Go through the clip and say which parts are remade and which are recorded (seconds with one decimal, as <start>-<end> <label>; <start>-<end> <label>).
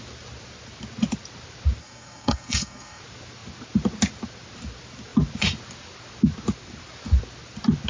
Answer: 0.0-1.8 recorded; 1.8-3.0 remade; 3.0-7.9 recorded